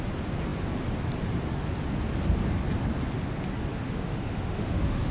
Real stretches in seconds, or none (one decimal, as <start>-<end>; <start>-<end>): 0.0-3.7